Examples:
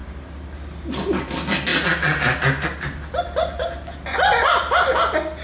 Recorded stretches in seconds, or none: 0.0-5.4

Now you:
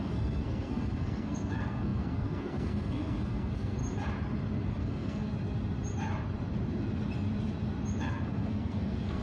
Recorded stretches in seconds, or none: 3.8-4.8; 5.3-8.0

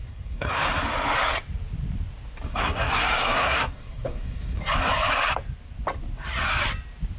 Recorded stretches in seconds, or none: 0.5-2.5; 4.6-7.2

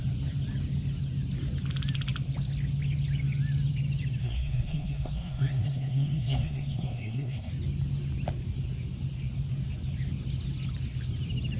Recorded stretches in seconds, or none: 0.0-4.2; 7.5-11.6